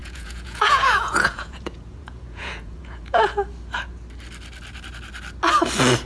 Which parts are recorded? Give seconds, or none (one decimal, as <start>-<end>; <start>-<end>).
3.3-6.1

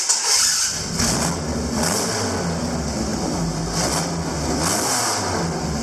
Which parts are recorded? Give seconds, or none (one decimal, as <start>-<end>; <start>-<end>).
0.0-5.8

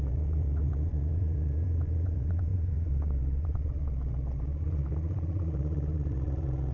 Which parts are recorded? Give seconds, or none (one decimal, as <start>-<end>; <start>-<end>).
none

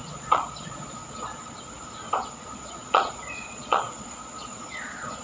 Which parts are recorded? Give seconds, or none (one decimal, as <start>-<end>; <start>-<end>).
1.0-2.3

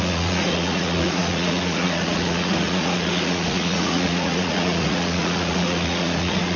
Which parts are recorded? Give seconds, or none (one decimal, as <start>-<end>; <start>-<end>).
none

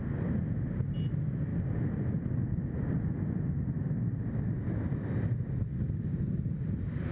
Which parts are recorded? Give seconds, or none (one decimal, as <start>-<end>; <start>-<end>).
0.0-7.1

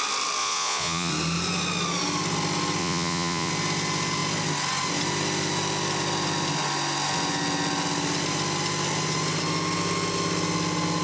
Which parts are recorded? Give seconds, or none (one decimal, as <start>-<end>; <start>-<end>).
0.0-0.4; 1.1-2.8; 3.5-11.0